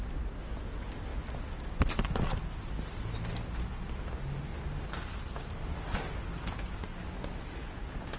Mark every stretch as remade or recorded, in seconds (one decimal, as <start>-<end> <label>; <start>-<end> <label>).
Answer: 0.0-8.2 recorded